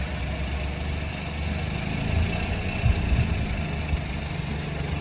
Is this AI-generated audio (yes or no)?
no